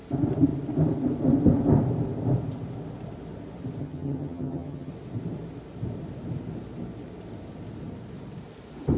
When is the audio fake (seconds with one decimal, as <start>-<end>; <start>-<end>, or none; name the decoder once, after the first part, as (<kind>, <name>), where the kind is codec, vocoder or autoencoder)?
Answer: 3.8-4.9 (vocoder, HiFi-GAN)